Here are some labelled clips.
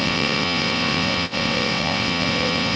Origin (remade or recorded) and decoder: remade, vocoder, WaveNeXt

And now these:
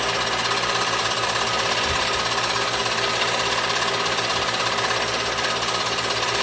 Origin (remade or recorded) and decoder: recorded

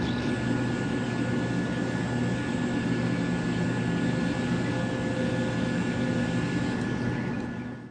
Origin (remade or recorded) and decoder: recorded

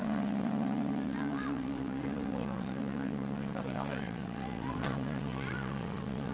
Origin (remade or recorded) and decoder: remade, vocoder, WaveNeXt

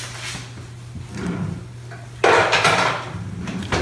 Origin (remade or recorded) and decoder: recorded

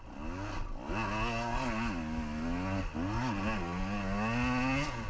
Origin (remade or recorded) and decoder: recorded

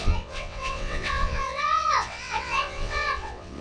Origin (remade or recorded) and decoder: remade, vocoder, WaveNeXt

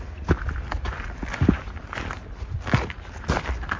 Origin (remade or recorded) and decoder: recorded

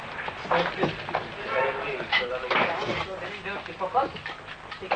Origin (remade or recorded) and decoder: recorded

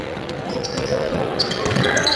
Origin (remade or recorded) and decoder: remade, vocoder, WaveNeXt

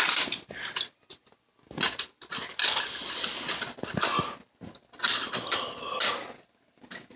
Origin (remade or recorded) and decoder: recorded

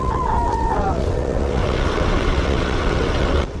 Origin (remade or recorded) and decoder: remade, vocoder, WaveNeXt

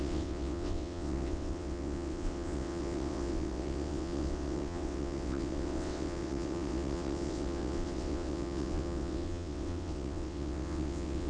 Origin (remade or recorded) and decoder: remade, vocoder, WaveNeXt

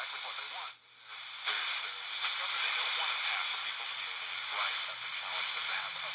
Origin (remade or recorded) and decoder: recorded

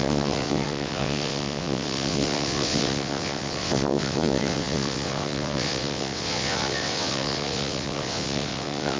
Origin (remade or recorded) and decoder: remade, vocoder, WaveNeXt